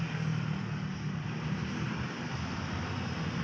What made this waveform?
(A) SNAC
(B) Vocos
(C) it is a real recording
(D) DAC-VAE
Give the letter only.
C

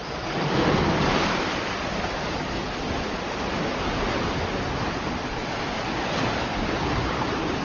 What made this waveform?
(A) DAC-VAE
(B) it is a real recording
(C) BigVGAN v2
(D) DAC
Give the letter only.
B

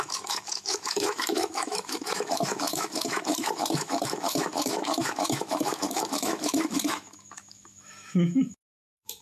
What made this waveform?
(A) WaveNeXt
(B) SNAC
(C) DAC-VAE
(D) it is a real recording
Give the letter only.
C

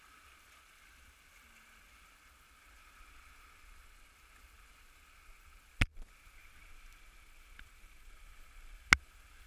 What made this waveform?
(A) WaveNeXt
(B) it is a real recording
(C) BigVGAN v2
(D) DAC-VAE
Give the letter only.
B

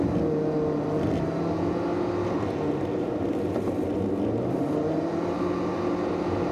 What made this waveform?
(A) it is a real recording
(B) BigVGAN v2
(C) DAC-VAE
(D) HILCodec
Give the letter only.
A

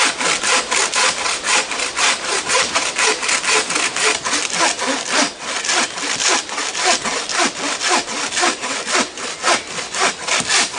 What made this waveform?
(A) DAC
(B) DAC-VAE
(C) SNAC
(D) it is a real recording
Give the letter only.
D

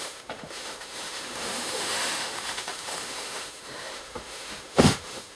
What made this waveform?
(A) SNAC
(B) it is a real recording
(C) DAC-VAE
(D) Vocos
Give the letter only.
C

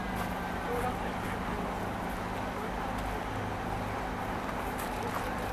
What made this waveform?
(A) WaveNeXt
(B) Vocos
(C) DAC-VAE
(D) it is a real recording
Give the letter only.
D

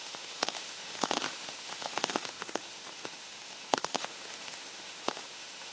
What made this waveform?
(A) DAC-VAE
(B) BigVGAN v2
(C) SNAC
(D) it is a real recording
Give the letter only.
A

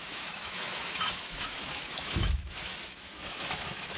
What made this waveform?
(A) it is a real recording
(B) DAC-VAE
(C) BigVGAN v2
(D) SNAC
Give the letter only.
B